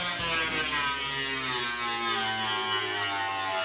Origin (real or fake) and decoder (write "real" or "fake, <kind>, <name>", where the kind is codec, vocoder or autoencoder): real